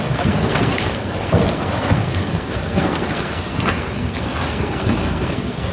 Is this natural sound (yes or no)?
no